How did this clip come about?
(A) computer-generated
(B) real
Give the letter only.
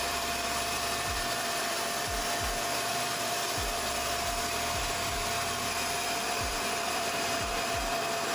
A